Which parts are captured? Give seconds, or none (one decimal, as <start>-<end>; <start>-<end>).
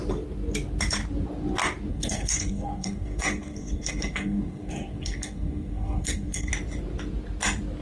0.0-1.9; 6.5-7.8